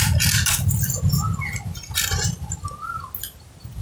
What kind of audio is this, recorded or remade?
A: recorded